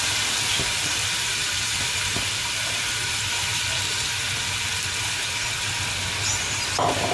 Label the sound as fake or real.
real